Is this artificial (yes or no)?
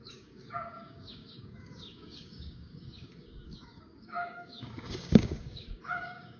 yes